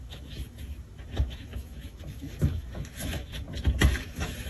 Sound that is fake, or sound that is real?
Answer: fake